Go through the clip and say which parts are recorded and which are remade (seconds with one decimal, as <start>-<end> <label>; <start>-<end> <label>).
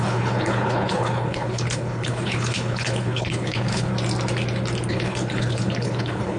0.0-3.9 remade; 3.9-4.9 recorded; 4.9-6.4 remade